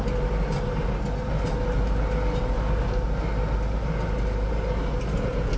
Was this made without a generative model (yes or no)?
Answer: yes